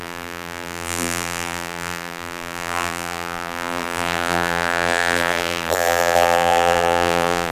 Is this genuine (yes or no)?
no